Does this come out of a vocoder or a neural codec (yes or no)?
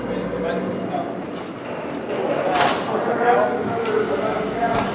no